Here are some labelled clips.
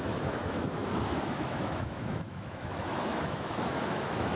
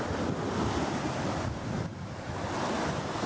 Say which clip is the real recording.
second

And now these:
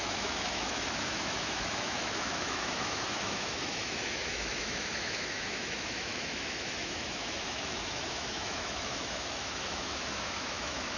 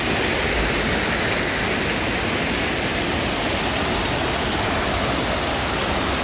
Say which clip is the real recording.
second